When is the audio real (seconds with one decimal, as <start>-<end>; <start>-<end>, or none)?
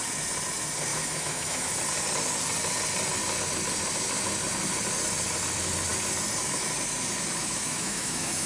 0.0-0.9; 1.7-7.4